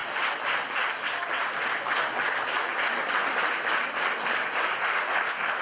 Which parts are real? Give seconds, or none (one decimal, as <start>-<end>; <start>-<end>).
0.0-5.6